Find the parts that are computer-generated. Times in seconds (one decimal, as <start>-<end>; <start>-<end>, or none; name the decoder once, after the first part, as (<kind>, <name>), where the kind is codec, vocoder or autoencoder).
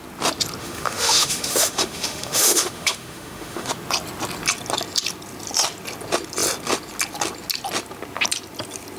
0.6-3.7 (autoencoder, DAC-VAE)